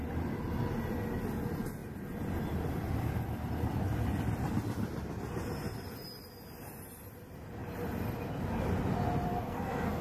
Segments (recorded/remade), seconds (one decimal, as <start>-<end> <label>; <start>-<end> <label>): 0.0-9.3 recorded; 9.3-10.0 remade